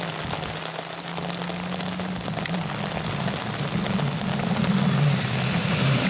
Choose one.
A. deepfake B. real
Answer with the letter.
B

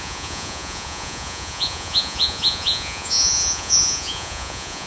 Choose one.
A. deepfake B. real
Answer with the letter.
A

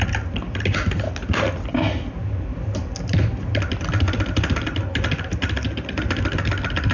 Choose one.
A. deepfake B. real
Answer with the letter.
B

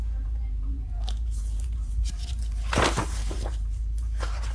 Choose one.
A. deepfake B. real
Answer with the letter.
A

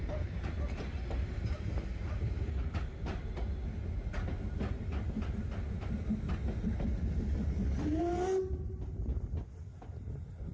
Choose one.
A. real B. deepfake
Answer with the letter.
A